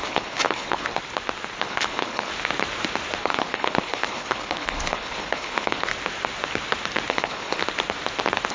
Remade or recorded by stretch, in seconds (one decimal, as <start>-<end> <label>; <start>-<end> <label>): 0.0-1.0 remade; 1.0-1.6 recorded; 1.6-2.3 remade; 2.3-3.2 recorded; 3.2-5.9 remade; 5.9-7.1 recorded; 7.1-7.6 remade; 7.6-8.5 recorded